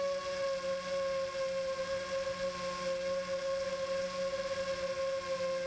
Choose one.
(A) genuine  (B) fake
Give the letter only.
A